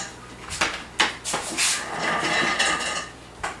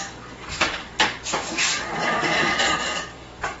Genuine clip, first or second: first